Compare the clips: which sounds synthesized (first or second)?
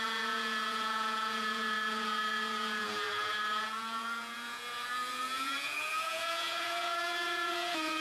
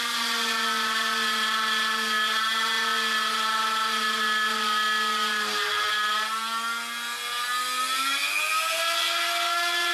first